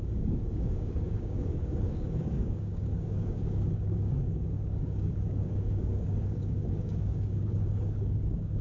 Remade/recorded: remade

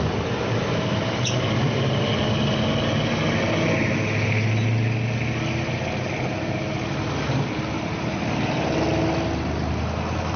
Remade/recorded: recorded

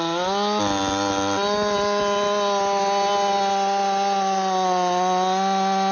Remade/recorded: recorded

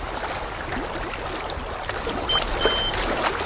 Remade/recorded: recorded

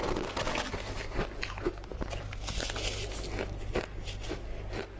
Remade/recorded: recorded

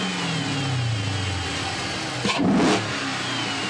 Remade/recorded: recorded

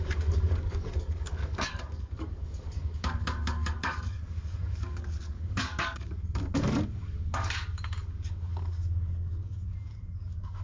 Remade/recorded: remade